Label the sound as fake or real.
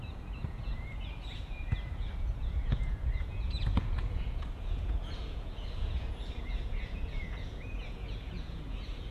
fake